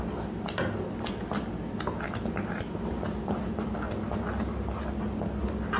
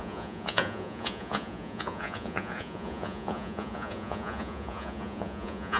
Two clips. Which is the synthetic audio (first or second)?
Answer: second